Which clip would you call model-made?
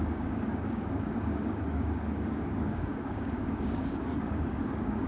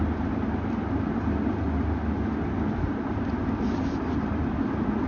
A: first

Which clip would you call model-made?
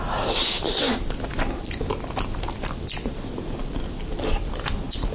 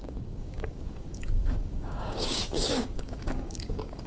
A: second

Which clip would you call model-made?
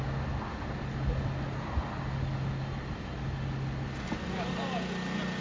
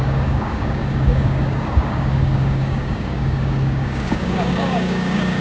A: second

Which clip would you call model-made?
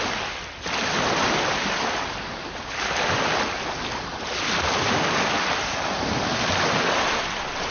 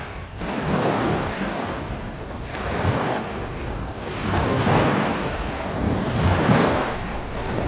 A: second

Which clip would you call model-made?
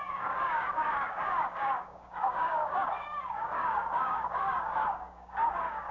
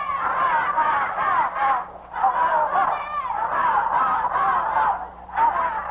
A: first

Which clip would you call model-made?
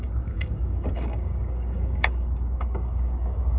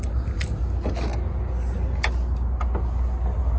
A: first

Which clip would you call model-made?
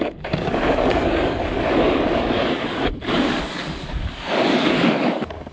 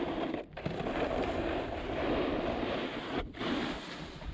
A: first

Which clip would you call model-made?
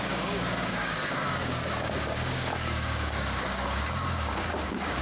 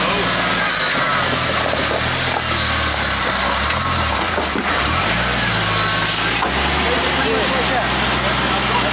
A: first